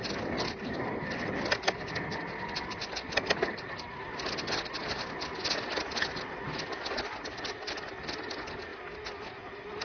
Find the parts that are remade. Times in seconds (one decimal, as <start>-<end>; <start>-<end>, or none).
none